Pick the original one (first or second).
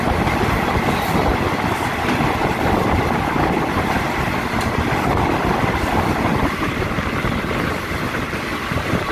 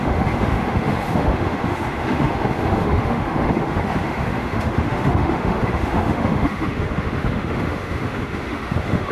first